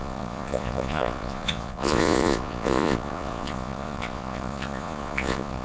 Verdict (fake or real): fake